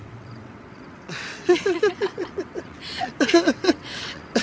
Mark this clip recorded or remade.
remade